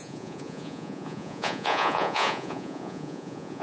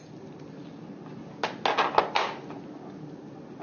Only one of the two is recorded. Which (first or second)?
second